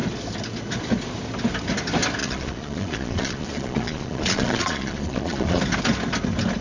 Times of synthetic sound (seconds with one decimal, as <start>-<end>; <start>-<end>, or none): 2.2-5.6